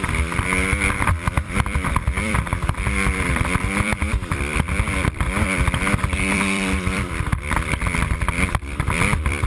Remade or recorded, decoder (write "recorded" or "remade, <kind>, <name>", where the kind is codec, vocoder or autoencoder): remade, vocoder, BigVGAN v2